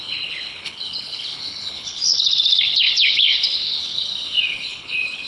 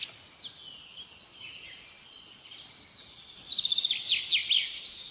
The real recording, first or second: second